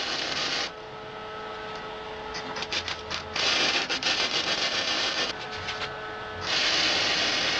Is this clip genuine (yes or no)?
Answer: yes